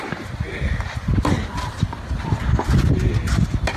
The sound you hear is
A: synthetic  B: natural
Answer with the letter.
B